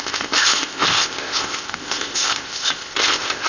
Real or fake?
fake